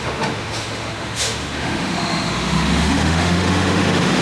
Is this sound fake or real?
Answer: fake